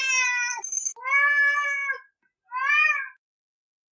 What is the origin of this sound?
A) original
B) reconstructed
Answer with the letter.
A